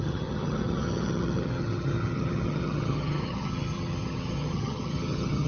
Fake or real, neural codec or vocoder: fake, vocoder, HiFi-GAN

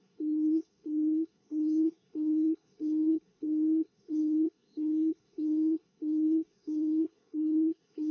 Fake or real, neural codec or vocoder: fake, codec, SNAC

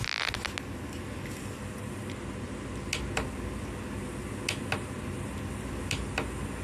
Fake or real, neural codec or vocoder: real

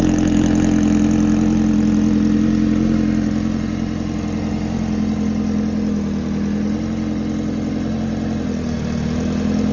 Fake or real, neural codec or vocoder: real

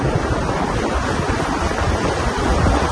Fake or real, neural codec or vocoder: real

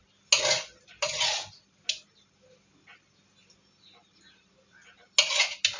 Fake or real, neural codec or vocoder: real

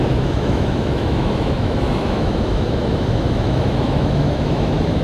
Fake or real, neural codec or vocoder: fake, autoencoder, DAC-VAE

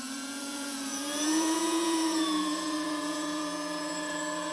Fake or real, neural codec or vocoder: fake, vocoder, Vocos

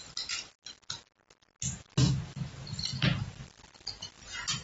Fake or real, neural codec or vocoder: real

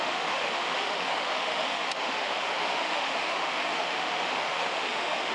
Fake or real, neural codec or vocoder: fake, autoencoder, DAC-VAE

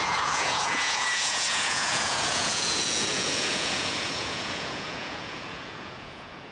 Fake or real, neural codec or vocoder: fake, vocoder, Vocos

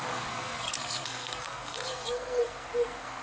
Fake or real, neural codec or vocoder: fake, codec, SNAC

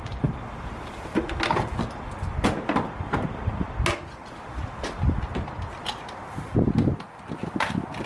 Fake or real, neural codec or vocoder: real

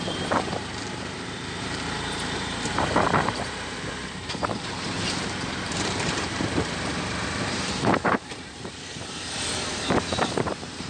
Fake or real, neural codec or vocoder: fake, vocoder, BigVGAN v2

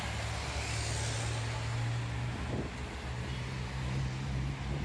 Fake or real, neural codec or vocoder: real